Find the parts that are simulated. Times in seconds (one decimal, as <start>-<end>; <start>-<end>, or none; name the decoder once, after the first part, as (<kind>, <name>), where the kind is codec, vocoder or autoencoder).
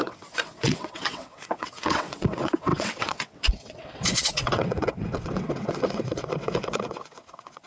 0.0-7.7 (vocoder, WaveNeXt)